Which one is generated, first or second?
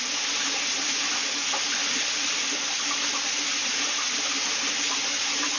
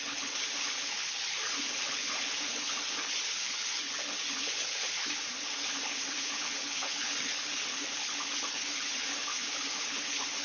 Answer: second